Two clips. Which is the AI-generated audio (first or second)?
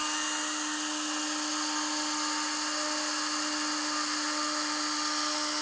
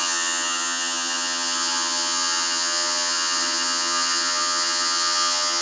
second